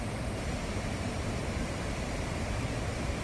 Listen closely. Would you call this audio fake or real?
fake